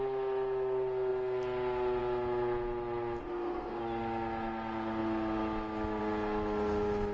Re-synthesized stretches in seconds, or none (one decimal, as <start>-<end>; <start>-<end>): 3.2-3.8